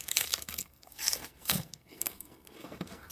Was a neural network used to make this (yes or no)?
yes